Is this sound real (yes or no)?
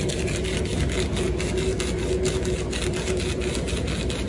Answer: yes